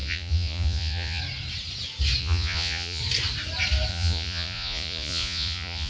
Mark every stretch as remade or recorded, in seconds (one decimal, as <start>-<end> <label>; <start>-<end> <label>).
0.0-1.2 remade; 1.2-2.2 recorded; 2.2-3.0 remade; 3.0-3.9 recorded; 3.9-5.9 remade